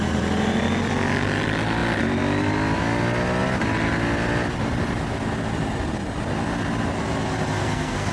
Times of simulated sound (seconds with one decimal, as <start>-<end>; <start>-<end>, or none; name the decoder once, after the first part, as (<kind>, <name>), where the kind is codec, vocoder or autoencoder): 7.6-8.1 (codec, SNAC)